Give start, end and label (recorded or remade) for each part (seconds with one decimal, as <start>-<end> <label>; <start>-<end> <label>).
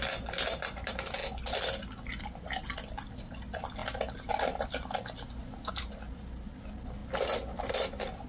0.0-7.0 recorded; 7.0-7.7 remade; 7.7-8.3 recorded